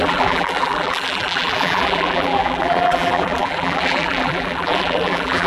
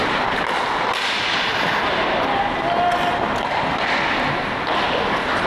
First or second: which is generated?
first